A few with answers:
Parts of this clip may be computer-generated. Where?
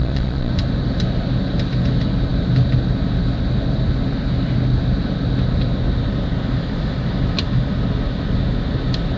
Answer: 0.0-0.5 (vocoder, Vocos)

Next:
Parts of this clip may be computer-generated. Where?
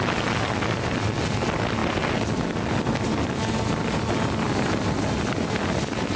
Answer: none